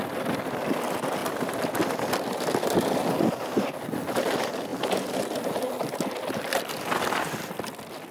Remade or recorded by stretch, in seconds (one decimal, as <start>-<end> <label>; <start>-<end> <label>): 0.0-8.1 recorded